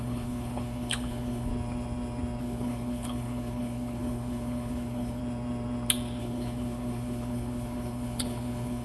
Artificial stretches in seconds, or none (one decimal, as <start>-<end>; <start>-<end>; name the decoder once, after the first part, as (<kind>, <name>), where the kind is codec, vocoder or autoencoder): 0.0-1.5 (codec, HILCodec); 2.4-5.2; 6.2-8.8